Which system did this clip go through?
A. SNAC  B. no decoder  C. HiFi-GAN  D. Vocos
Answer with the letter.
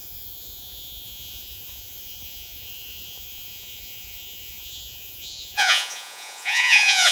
D